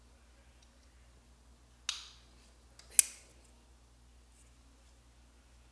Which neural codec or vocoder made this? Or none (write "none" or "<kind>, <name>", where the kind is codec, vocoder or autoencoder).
none